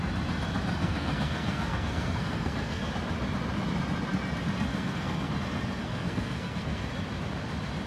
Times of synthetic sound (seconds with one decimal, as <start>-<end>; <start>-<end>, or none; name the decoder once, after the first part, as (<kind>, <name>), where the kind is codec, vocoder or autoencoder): 0.8-2.9 (codec, SNAC); 4.7-5.3; 5.8-6.9